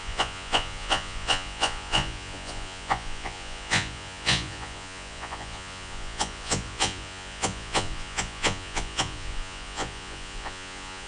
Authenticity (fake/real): fake